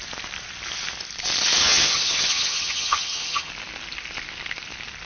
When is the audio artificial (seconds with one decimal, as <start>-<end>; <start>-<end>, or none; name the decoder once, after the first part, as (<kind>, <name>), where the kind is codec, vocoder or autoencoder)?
1.6-3.5 (vocoder, HiFi-GAN)